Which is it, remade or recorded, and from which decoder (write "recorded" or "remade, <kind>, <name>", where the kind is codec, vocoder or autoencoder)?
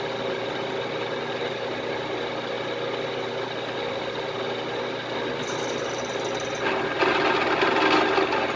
recorded